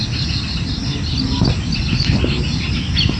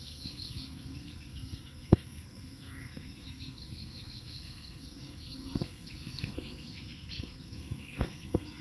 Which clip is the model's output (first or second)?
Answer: second